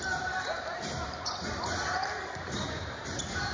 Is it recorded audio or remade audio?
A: remade